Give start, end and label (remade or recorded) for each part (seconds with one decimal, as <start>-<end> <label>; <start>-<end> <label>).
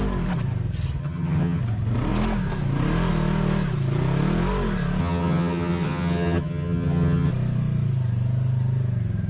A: 0.0-1.0 recorded; 1.0-1.6 remade; 1.6-5.0 recorded; 5.0-7.3 remade; 7.3-9.3 recorded